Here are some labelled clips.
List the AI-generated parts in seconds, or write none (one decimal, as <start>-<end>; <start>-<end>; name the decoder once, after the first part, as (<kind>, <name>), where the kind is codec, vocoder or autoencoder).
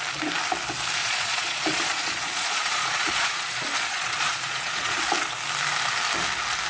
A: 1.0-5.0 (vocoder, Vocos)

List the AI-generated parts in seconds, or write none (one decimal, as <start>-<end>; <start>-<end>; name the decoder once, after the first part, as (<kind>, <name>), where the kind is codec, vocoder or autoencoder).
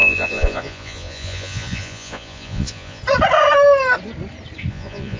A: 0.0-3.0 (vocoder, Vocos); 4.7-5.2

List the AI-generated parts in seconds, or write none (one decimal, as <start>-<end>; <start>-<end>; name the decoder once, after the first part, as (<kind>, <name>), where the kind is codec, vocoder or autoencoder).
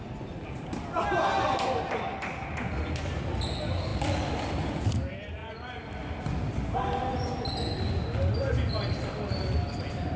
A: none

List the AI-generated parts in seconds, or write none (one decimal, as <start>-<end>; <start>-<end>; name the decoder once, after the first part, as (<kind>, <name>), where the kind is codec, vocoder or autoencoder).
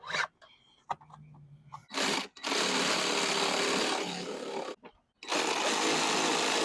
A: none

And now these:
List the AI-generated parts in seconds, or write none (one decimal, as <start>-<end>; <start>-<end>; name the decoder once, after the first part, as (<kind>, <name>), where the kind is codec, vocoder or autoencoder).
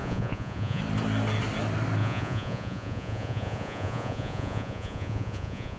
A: 0.0-0.8 (vocoder, Vocos); 2.0-5.8